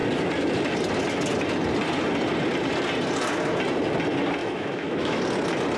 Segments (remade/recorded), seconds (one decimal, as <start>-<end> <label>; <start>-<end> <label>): 0.0-4.4 recorded; 4.4-5.2 remade; 5.2-5.8 recorded